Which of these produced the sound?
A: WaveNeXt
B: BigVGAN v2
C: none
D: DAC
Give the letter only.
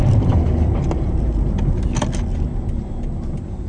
C